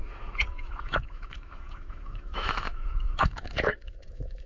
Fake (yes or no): yes